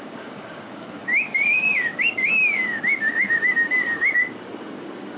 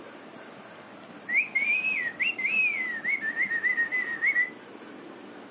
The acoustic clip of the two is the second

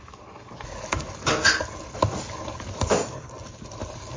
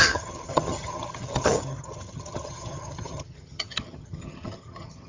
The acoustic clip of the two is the first